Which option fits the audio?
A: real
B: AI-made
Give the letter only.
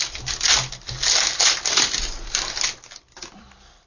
A